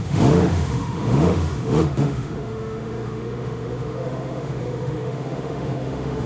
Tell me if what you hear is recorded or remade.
remade